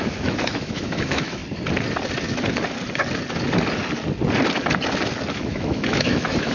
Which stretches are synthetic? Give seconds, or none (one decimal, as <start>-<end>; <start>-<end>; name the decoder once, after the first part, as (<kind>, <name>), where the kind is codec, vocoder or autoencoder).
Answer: 0.0-1.4 (autoencoder, DAC-VAE); 5.3-6.5